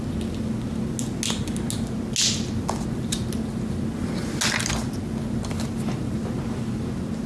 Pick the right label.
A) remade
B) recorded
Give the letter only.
B